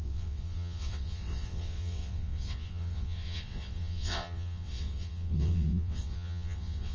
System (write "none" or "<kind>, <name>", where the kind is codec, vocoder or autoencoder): vocoder, WaveNeXt